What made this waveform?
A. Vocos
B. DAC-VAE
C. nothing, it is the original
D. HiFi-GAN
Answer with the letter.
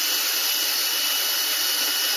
C